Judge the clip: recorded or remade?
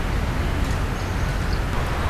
recorded